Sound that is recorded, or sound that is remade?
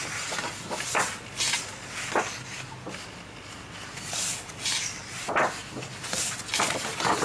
recorded